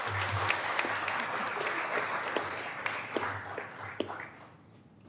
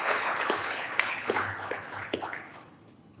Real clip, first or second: first